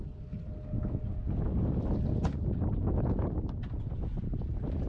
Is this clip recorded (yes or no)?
yes